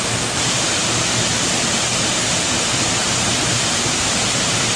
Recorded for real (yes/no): no